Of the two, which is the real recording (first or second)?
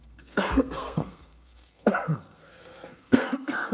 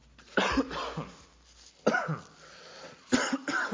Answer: second